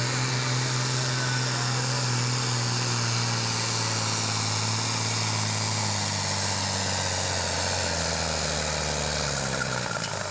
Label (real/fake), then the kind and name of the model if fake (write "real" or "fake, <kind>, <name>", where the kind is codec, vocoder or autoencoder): real